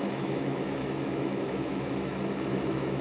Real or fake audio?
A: fake